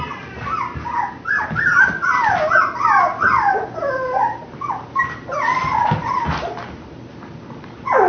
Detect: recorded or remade recorded